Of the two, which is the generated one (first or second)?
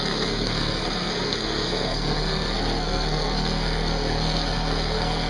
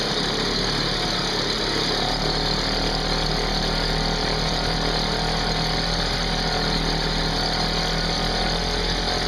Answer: first